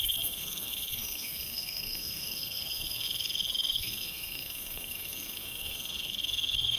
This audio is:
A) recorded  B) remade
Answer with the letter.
B